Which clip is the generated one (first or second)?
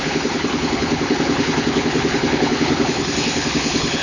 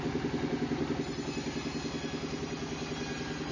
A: first